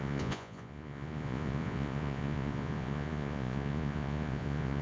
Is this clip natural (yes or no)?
no